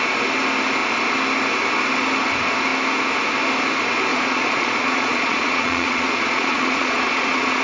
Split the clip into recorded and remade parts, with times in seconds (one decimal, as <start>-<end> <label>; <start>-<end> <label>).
0.0-4.1 recorded; 4.1-7.6 remade